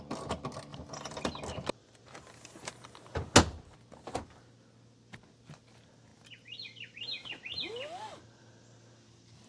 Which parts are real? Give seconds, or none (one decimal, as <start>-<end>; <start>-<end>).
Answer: 0.0-0.7; 1.4-1.8; 3.2-9.5